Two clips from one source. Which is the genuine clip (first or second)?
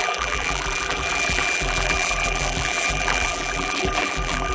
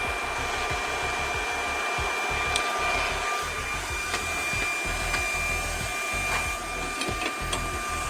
second